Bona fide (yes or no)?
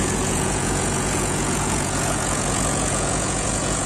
no